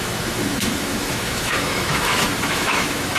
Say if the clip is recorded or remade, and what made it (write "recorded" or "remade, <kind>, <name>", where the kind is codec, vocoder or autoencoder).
remade, autoencoder, DAC-VAE